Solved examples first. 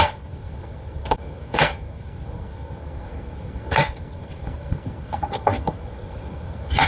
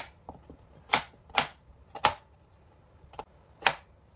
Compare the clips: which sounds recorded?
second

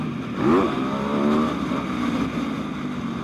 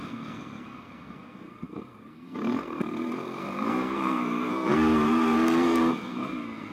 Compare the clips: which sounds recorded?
first